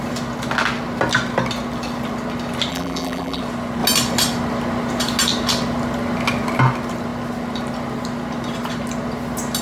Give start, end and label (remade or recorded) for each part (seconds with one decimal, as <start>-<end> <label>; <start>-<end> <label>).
0.0-2.7 recorded; 2.7-3.4 remade; 3.4-9.6 recorded